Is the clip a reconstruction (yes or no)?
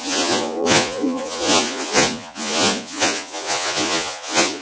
yes